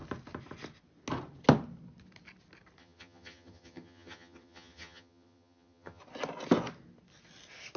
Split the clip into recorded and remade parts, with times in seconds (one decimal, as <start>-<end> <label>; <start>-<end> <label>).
0.0-2.8 recorded; 2.8-6.0 remade; 6.0-7.8 recorded